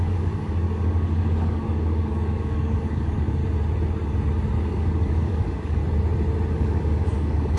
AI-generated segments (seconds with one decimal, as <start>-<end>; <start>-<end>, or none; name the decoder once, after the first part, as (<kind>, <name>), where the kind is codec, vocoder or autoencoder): 0.0-3.4 (codec, DAC); 4.6-5.8; 6.5-7.6